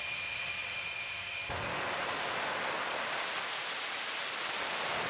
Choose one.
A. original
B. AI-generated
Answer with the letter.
A